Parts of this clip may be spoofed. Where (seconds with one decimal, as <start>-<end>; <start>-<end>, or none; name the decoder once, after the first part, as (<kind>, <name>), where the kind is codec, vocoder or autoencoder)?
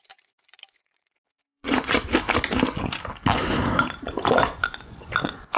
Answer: 0.0-2.1 (vocoder, Vocos); 4.0-5.6